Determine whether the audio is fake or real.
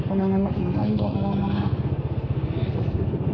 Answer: fake